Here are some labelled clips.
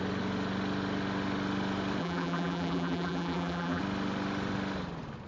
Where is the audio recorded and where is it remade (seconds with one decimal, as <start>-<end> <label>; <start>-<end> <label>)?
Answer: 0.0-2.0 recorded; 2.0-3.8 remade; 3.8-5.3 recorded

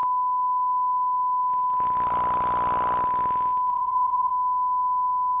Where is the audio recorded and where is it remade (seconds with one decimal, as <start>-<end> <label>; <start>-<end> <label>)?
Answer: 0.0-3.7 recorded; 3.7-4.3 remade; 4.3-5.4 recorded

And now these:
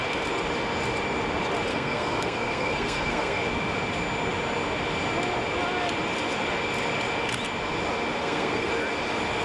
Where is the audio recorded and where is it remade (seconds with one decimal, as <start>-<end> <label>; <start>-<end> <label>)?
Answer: 0.0-1.7 recorded; 1.7-3.4 remade; 3.4-8.2 recorded; 8.2-8.7 remade; 8.7-9.4 recorded

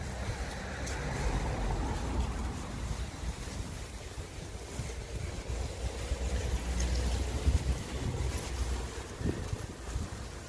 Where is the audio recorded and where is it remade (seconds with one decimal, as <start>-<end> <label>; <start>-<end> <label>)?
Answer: 0.0-2.4 recorded; 2.4-4.5 remade; 4.5-10.5 recorded